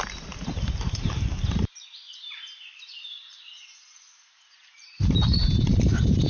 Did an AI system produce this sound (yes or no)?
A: yes